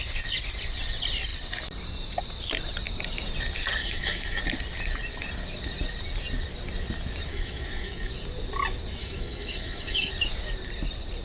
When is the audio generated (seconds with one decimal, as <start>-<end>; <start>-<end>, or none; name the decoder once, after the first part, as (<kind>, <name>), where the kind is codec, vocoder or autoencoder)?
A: 3.8-4.4 (autoencoder, DAC-VAE); 7.3-8.1; 9.0-10.1